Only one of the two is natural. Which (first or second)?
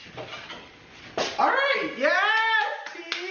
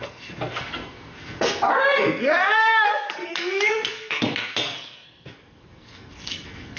first